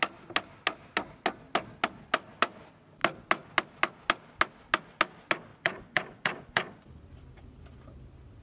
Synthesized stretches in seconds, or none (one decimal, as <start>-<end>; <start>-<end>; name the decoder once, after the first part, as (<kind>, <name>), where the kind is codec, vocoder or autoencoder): 5.5-7.0 (vocoder, Vocos)